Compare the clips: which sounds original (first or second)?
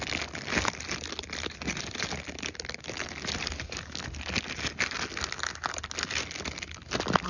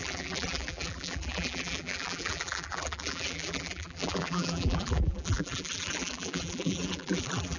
first